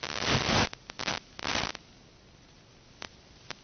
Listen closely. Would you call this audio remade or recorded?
recorded